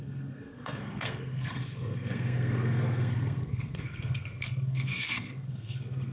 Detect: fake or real fake